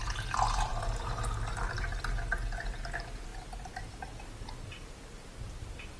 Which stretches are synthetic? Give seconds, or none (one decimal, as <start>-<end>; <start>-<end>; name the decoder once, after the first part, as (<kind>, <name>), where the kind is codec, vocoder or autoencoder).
none